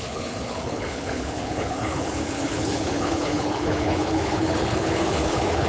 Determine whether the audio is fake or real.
fake